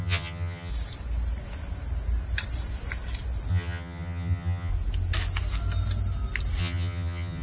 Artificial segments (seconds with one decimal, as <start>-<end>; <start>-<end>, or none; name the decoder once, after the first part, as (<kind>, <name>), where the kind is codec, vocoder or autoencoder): 0.0-0.7 (vocoder, HiFi-GAN); 3.5-4.7; 6.6-7.4

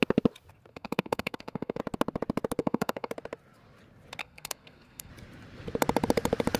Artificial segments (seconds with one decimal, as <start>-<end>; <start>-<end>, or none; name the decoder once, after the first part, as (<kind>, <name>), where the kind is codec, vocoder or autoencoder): 0.7-1.8 (codec, SNAC); 2.6-3.1; 4.2-5.1

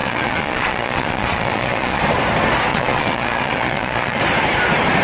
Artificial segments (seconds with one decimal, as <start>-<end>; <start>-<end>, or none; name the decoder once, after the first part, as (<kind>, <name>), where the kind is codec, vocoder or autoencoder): 0.0-2.0 (vocoder, Vocos); 2.7-4.2

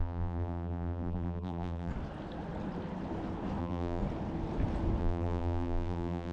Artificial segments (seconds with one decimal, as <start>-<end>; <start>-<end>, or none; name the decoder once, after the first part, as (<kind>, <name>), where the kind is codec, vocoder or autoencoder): 0.0-1.9 (vocoder, BigVGAN v2); 3.6-4.0; 5.0-6.3

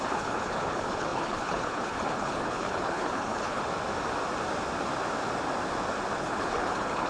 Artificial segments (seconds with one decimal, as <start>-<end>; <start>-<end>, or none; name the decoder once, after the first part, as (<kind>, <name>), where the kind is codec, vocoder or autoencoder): 0.0-3.6 (codec, HILCodec); 6.2-7.1

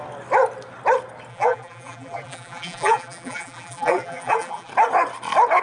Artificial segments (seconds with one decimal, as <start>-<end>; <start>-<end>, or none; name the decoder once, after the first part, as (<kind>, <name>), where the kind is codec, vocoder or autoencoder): 1.3-4.7 (vocoder, BigVGAN v2)

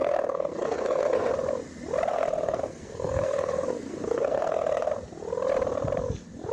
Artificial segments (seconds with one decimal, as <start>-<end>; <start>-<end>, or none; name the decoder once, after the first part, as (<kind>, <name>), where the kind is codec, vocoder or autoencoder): 0.0-1.3 (codec, SNAC); 2.1-4.9

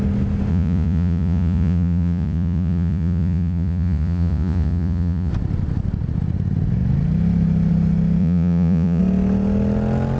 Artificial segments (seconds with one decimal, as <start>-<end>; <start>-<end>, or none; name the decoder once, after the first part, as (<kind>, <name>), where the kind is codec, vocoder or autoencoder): 0.5-5.3 (vocoder, Vocos); 8.2-9.0